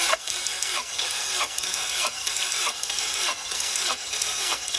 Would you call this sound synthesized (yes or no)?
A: yes